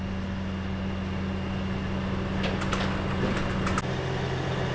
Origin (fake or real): real